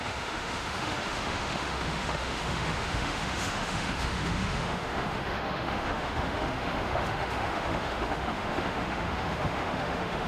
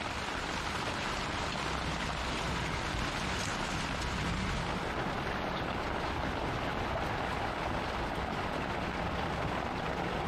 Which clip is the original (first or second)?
second